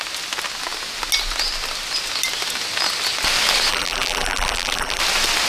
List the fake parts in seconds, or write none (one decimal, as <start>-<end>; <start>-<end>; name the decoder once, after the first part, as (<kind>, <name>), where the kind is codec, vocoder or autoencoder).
3.7-5.0 (vocoder, BigVGAN v2)